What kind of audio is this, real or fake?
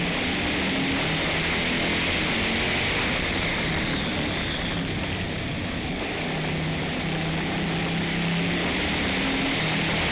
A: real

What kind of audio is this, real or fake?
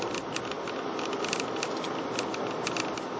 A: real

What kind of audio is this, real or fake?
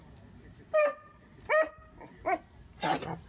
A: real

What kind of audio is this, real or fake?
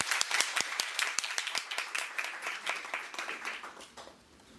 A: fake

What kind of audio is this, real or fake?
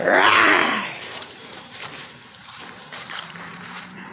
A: fake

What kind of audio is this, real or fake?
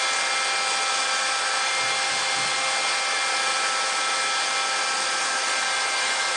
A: real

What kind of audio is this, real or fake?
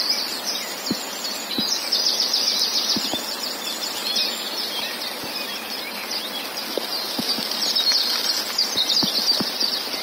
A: real